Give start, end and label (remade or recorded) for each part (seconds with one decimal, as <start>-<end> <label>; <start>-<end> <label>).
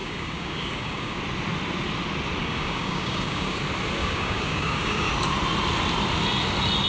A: 0.0-1.2 remade; 1.2-2.4 recorded; 2.4-3.6 remade; 3.6-4.0 recorded; 4.0-5.1 remade; 5.1-6.9 recorded